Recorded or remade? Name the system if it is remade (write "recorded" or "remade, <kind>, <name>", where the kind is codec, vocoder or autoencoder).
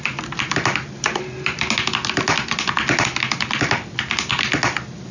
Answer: recorded